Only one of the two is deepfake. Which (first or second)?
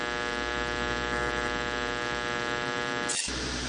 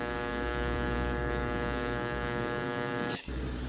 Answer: second